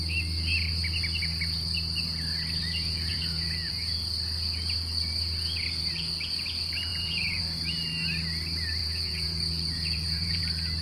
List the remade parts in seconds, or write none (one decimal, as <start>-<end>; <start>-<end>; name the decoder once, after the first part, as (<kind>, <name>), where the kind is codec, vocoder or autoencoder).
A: 3.1-3.7 (vocoder, Vocos); 6.9-7.4; 8.8-10.4